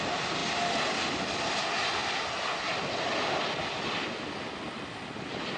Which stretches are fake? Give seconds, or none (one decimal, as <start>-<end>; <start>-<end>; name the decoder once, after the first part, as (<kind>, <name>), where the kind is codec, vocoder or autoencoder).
0.4-1.0 (vocoder, BigVGAN v2)